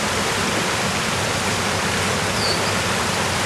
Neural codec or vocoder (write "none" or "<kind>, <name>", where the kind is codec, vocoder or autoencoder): none